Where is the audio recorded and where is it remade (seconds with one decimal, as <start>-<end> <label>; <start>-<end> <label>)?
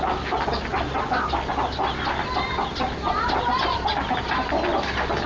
0.0-5.3 recorded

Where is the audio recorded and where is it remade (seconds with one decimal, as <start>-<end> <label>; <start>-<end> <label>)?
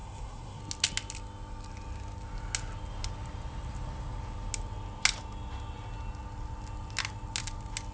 0.0-0.6 remade; 0.6-7.9 recorded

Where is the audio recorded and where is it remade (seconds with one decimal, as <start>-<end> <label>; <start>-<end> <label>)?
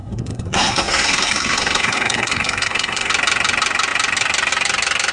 0.0-3.1 remade; 3.1-5.1 recorded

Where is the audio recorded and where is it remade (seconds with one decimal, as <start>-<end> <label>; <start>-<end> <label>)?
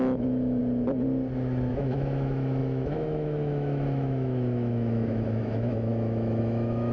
0.0-0.6 remade; 0.6-1.7 recorded; 1.7-6.9 remade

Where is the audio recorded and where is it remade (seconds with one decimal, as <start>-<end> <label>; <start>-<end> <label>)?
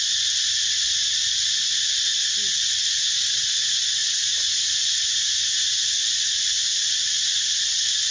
0.0-4.0 recorded; 4.0-5.1 remade; 5.1-8.1 recorded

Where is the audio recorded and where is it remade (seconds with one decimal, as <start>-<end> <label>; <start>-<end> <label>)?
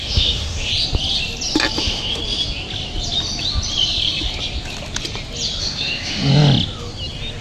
0.0-0.7 remade; 0.7-1.8 recorded; 1.8-2.2 remade; 2.2-5.6 recorded; 5.6-6.3 remade; 6.3-7.4 recorded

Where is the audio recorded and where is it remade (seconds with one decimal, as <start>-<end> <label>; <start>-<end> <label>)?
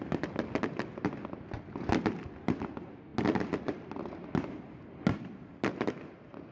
0.0-6.5 recorded